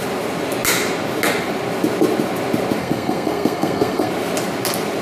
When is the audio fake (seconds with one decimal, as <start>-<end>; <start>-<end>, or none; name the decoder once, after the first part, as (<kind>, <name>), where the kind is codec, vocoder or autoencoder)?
2.8-4.1 (codec, SNAC)